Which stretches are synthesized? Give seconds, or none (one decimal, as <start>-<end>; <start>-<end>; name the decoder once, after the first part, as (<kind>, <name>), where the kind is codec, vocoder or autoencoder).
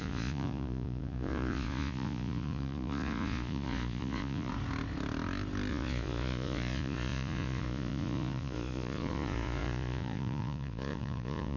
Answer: 0.0-4.5 (vocoder, Vocos); 5.7-11.6